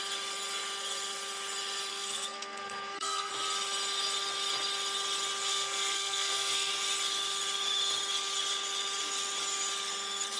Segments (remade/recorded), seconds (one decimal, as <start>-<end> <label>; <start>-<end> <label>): 0.0-1.9 recorded; 1.9-3.3 remade; 3.3-5.5 recorded; 5.5-6.7 remade; 6.7-10.4 recorded